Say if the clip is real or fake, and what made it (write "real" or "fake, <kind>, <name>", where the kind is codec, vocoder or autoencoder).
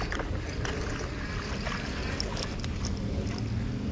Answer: real